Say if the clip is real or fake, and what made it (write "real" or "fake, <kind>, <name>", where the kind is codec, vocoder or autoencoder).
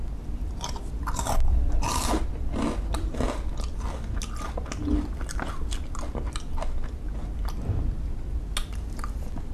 real